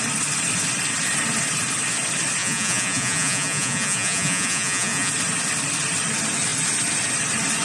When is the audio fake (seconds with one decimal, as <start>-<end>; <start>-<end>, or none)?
2.4-5.1